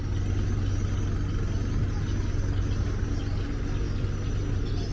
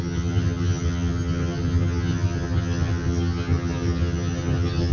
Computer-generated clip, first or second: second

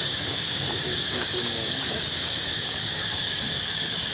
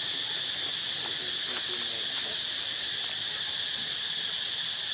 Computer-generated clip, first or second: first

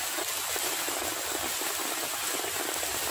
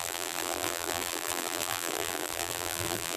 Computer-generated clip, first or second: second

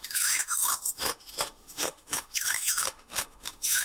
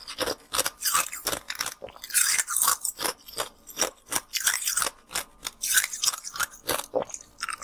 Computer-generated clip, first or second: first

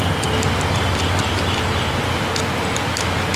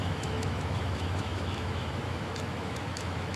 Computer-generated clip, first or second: second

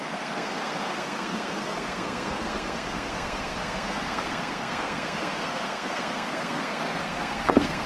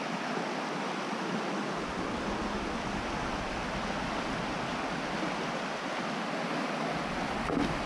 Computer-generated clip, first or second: first